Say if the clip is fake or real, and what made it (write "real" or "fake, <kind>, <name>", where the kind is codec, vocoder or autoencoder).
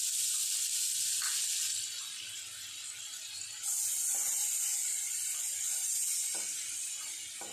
real